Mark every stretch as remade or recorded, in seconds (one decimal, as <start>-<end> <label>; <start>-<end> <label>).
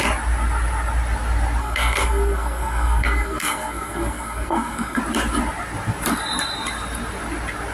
0.0-1.6 recorded; 1.6-5.0 remade; 5.0-7.7 recorded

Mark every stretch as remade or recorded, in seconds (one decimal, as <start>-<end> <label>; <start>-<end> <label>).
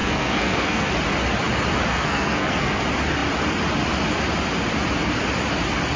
0.0-0.9 remade; 0.9-1.9 recorded; 1.9-2.8 remade; 2.8-6.0 recorded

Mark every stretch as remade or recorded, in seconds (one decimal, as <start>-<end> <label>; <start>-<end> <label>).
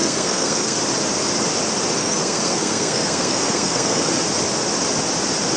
0.0-0.8 remade; 0.8-2.0 recorded; 2.0-4.1 remade; 4.1-5.6 recorded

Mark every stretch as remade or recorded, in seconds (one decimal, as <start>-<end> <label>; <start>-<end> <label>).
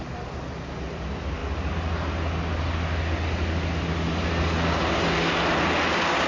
0.0-6.3 recorded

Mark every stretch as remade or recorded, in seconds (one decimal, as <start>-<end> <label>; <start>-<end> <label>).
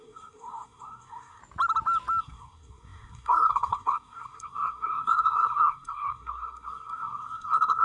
0.0-1.4 remade; 1.4-2.2 recorded; 2.2-7.8 remade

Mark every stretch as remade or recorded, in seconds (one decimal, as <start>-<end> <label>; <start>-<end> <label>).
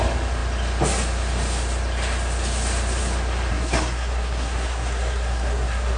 0.0-3.5 recorded; 3.5-6.0 remade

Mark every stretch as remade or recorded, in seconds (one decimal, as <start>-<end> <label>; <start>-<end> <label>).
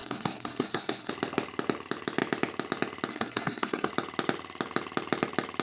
0.0-1.1 remade; 1.1-3.1 recorded; 3.1-3.9 remade; 3.9-5.6 recorded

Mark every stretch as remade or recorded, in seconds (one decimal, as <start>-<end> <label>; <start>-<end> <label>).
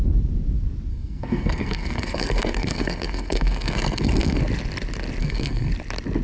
0.0-0.9 recorded; 0.9-4.4 remade; 4.4-5.2 recorded; 5.2-5.7 remade; 5.7-6.2 recorded